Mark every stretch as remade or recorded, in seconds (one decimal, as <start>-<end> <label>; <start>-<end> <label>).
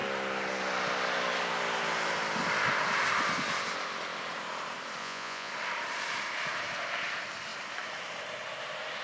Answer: 0.0-5.0 recorded; 5.0-5.5 remade; 5.5-9.0 recorded